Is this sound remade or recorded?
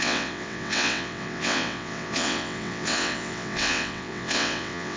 remade